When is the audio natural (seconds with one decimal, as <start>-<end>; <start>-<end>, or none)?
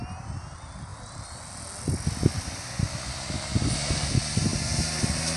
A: 0.0-5.4